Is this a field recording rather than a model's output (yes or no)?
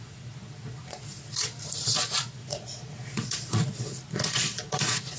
no